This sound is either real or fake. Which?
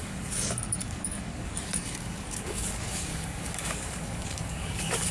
fake